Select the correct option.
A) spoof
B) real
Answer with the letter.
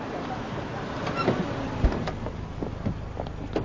B